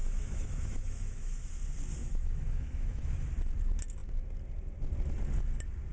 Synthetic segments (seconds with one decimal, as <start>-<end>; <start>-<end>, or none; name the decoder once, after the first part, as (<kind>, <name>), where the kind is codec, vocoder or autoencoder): 0.0-1.5 (autoencoder, DAC-VAE); 2.0-3.3